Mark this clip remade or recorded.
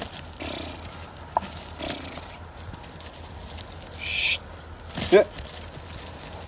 recorded